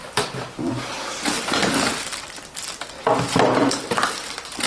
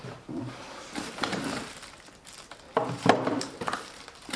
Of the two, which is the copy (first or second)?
second